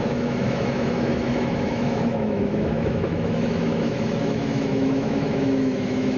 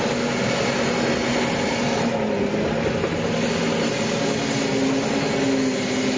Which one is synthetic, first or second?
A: first